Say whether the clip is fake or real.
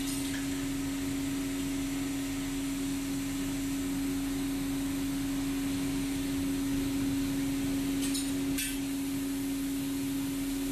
real